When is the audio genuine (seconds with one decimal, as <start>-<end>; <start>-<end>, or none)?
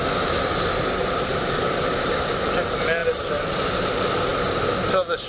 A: 0.0-5.3